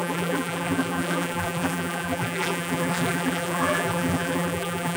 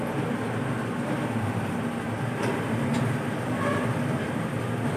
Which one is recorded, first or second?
second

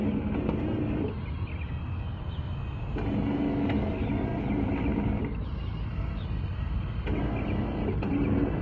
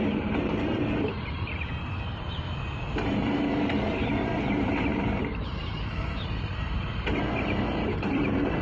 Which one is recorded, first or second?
first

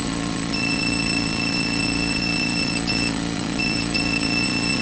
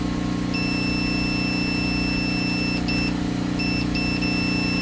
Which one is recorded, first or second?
second